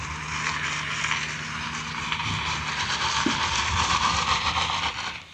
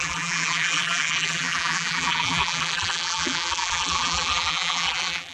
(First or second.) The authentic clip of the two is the first